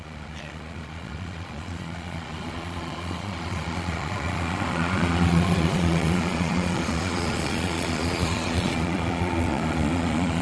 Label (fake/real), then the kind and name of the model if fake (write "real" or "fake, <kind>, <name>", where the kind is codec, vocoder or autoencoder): fake, vocoder, Vocos